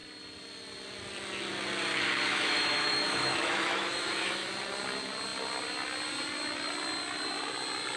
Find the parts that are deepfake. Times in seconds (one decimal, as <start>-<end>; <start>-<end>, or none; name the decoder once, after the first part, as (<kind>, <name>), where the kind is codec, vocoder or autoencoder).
2.3-4.5 (autoencoder, DAC-VAE)